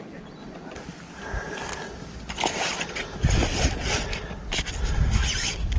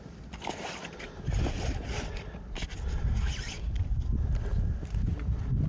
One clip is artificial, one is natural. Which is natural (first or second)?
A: first